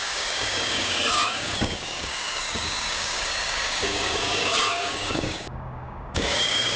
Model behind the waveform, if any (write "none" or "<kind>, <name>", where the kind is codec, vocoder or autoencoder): codec, DAC